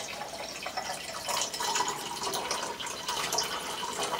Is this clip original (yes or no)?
no